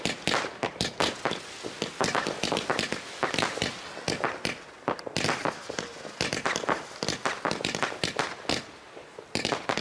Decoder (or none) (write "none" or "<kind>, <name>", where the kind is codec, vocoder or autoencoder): none